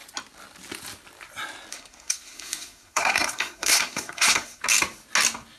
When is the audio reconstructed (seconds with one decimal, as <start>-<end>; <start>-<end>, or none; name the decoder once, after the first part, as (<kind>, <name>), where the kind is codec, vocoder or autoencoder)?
1.7-4.6 (codec, SNAC)